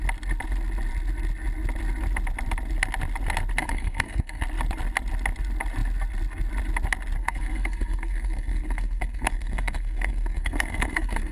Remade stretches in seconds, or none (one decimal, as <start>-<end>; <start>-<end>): 3.6-4.4; 7.2-11.3